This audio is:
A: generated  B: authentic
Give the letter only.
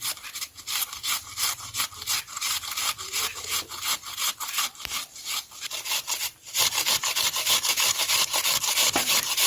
A